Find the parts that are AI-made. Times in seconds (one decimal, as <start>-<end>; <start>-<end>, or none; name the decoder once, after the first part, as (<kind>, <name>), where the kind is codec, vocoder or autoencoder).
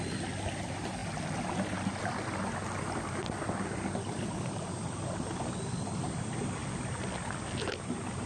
0.0-8.3 (vocoder, BigVGAN v2)